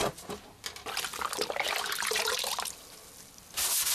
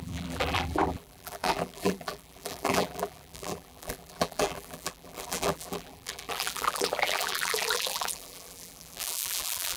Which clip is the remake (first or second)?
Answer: second